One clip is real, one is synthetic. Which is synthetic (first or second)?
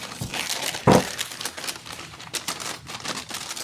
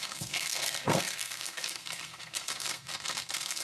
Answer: second